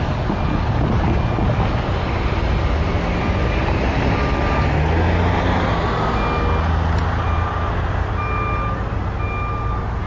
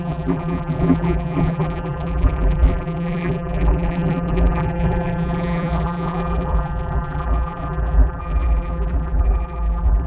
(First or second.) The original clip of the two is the first